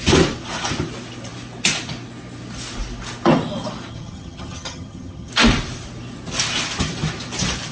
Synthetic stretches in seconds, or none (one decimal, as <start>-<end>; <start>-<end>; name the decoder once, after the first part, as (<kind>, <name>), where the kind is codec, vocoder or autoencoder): 3.9-5.3 (vocoder, HiFi-GAN)